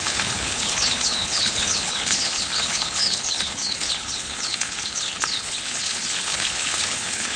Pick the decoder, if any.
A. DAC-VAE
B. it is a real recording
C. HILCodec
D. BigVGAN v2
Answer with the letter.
C